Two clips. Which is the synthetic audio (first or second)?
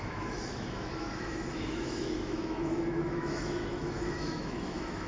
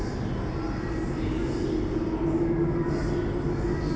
first